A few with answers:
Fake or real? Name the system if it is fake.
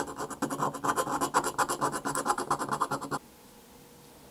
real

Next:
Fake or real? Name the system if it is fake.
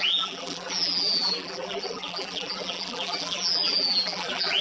fake, vocoder, BigVGAN v2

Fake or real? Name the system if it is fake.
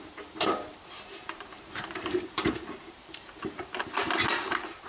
fake, vocoder, BigVGAN v2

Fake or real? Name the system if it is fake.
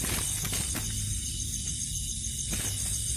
real